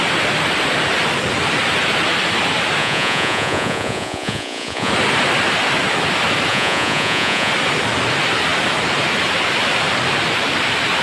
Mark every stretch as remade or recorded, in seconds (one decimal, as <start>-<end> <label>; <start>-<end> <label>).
0.0-2.8 recorded; 2.8-4.9 remade; 4.9-6.5 recorded; 6.5-7.5 remade; 7.5-11.0 recorded